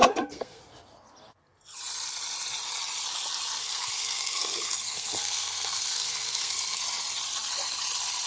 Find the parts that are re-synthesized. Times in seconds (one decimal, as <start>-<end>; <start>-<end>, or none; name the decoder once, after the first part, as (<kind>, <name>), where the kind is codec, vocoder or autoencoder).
0.0-0.6 (codec, SNAC); 3.6-6.8